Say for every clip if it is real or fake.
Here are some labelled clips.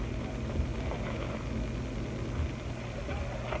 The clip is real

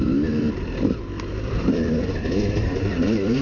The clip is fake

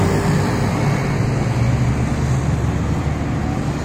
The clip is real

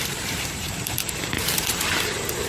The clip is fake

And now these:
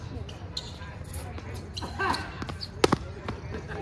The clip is real